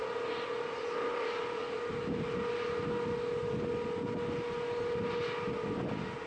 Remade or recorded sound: recorded